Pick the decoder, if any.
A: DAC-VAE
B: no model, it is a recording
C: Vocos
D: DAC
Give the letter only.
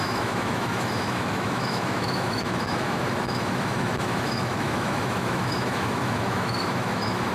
A